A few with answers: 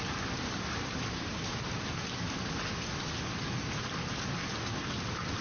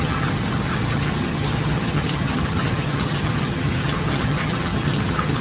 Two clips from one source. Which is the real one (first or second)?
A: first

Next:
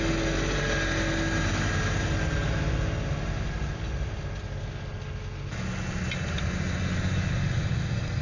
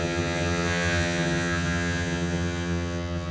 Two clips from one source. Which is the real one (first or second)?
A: first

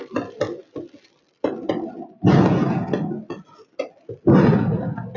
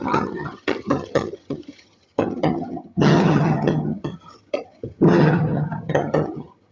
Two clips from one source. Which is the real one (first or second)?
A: first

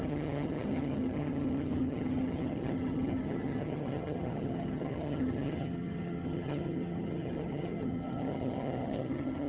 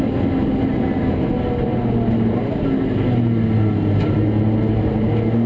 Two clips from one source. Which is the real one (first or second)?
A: second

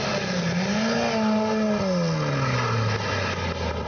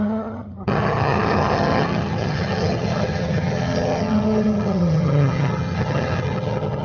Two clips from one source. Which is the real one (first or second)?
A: first